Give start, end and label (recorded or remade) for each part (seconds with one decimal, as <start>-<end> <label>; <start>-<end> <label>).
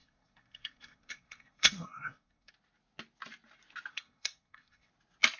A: 0.0-2.5 remade; 2.5-3.9 recorded; 3.9-4.9 remade; 4.9-5.4 recorded